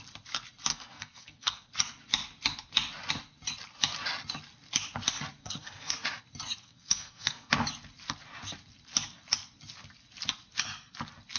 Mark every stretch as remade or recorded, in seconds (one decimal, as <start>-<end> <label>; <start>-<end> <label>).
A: 0.0-0.7 recorded; 0.7-1.7 remade; 1.7-5.4 recorded; 5.4-5.9 remade; 5.9-6.6 recorded; 6.6-7.5 remade; 7.5-11.4 recorded